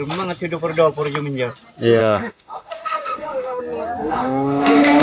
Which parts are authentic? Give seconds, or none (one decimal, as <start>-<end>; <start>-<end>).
0.0-2.0; 3.6-4.0